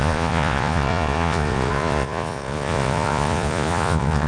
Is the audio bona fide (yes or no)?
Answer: no